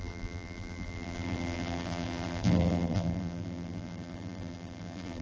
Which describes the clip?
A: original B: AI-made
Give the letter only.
B